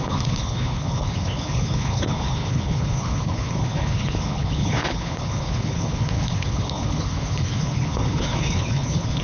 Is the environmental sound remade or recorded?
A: remade